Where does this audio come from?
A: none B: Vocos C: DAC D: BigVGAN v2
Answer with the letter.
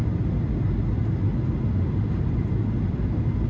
A